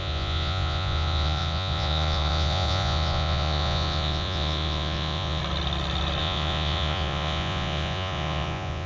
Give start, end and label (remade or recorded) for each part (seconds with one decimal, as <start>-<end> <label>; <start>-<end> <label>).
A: 0.0-5.4 remade; 5.4-6.2 recorded; 6.2-8.9 remade